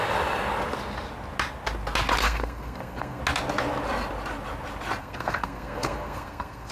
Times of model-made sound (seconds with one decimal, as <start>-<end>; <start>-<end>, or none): 2.2-3.2; 5.0-6.7